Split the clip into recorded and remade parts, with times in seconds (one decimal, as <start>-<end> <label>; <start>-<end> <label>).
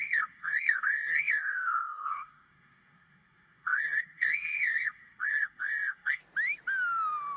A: 0.0-6.2 remade; 6.2-7.4 recorded